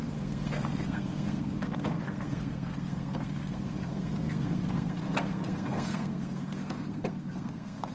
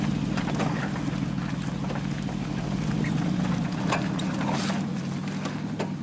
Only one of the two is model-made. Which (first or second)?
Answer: first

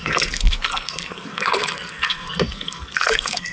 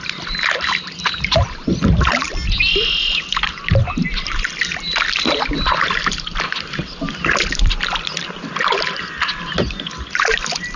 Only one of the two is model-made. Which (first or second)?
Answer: first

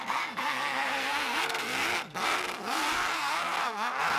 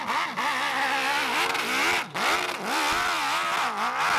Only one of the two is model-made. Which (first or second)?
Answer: first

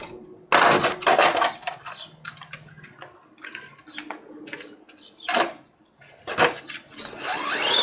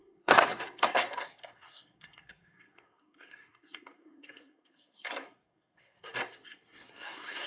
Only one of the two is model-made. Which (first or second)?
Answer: second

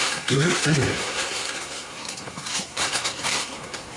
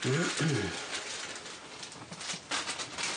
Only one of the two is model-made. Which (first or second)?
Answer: first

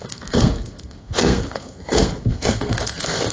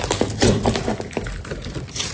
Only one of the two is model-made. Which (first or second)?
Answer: first